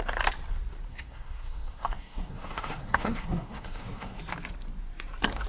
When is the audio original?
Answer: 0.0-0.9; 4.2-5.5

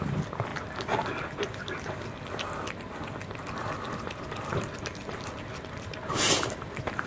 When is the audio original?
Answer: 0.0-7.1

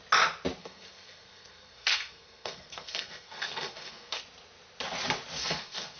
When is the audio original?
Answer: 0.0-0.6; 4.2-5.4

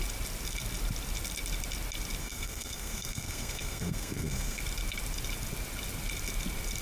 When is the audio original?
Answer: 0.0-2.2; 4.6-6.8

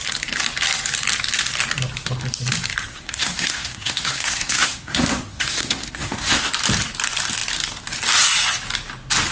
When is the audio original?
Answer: 0.0-2.9; 6.5-9.3